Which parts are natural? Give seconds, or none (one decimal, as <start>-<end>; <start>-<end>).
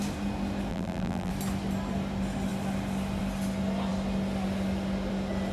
0.0-0.7; 1.3-5.5